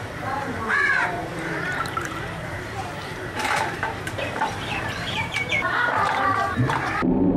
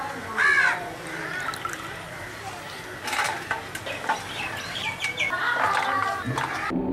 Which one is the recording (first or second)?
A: second